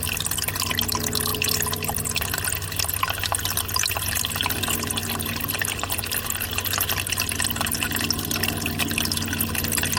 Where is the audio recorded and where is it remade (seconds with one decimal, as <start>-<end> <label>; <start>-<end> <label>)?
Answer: 0.0-10.0 recorded

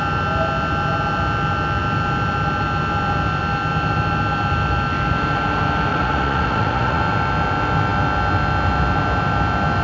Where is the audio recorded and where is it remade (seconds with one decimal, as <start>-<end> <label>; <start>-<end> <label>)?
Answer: 0.0-5.9 recorded; 5.9-7.0 remade; 7.0-9.8 recorded

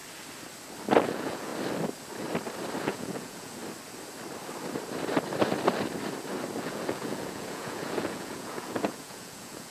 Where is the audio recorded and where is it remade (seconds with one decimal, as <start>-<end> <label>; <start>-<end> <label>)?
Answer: 0.0-1.0 recorded; 1.0-1.5 remade; 1.5-2.8 recorded; 2.8-3.6 remade; 3.6-6.6 recorded; 6.6-9.7 remade

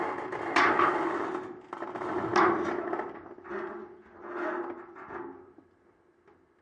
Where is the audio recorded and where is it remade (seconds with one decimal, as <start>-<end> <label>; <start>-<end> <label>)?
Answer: 0.0-6.6 recorded